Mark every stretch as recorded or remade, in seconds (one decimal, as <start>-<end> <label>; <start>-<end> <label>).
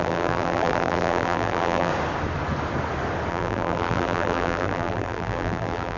0.0-1.9 remade; 1.9-3.3 recorded; 3.3-6.0 remade